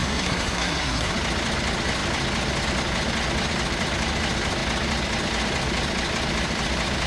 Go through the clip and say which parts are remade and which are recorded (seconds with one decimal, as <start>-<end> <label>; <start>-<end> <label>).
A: 0.0-1.1 remade; 1.1-7.1 recorded